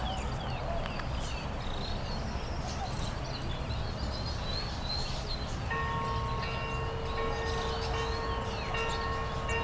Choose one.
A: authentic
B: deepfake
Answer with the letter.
A